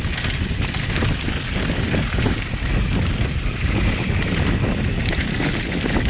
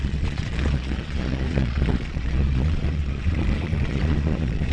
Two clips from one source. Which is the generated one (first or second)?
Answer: second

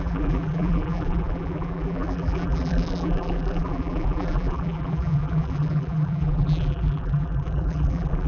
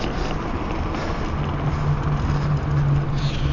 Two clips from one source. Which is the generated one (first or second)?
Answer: first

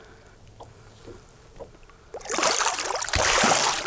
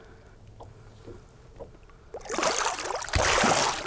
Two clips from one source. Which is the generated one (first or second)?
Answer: first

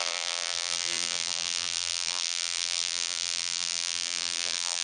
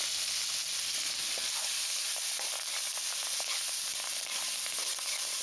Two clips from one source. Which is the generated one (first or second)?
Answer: first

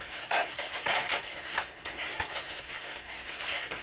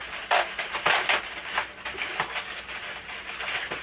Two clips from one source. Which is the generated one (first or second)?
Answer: first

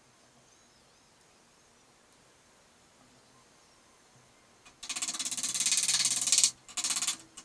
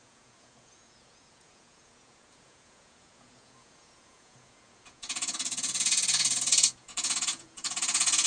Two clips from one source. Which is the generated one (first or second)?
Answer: second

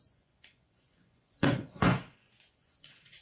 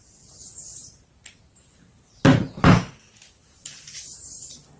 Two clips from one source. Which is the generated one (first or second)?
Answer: first